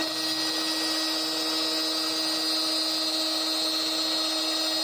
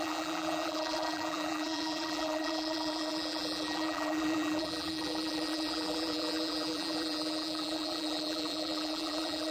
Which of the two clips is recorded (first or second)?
first